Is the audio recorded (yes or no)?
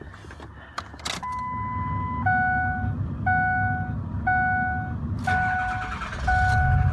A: yes